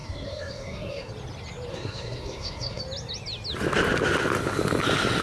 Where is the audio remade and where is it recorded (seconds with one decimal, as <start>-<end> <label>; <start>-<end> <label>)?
0.0-1.1 remade; 1.1-1.7 recorded; 1.7-2.8 remade; 2.8-5.2 recorded